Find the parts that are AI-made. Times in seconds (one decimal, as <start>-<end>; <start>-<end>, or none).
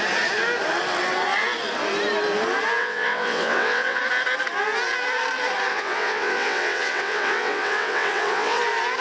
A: 2.8-4.0; 5.7-8.6